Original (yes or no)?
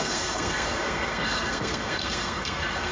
no